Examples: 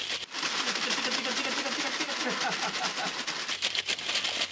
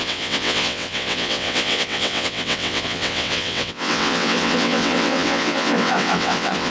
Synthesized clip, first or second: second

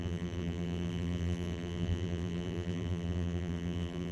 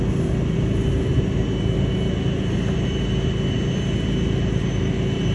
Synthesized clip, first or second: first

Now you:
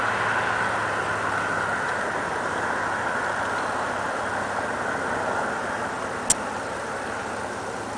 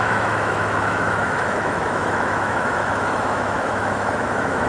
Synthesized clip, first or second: second